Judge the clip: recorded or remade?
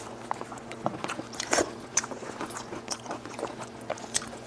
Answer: remade